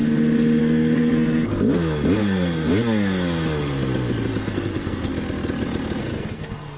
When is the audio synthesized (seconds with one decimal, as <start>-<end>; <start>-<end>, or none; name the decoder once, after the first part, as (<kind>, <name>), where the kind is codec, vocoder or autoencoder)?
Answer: 0.6-1.5 (codec, SNAC); 2.2-2.7; 4.4-5.1; 6.0-6.8